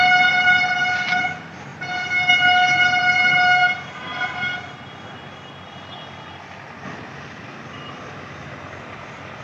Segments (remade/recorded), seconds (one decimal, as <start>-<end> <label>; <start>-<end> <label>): 0.0-9.4 recorded